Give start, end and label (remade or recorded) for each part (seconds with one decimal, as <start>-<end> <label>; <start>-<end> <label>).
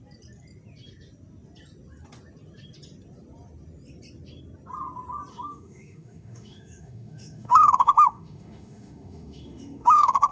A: 0.0-5.3 recorded; 5.3-10.3 remade